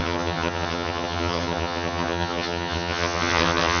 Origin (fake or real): fake